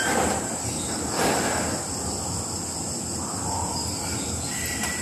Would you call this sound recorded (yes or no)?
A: yes